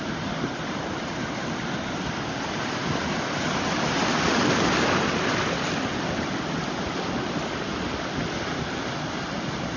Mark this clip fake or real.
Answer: real